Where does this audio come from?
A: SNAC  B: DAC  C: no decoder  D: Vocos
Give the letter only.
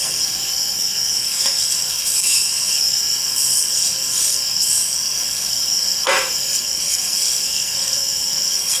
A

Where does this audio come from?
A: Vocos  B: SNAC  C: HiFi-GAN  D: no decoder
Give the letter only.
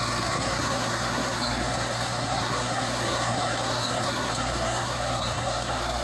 B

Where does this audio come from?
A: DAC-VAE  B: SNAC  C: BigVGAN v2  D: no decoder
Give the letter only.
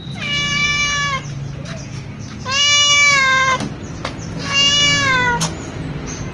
D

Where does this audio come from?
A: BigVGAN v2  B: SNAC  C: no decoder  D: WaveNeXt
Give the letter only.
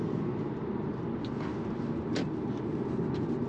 C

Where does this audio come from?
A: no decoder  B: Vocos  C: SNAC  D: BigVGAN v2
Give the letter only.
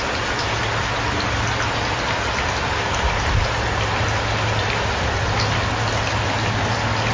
A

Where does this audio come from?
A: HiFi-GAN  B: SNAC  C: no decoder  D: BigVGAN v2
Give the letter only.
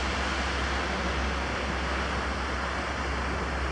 C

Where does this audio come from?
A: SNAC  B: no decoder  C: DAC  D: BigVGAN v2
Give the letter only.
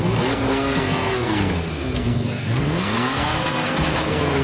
A